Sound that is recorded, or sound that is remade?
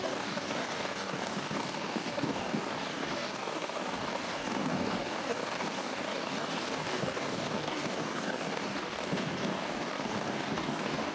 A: remade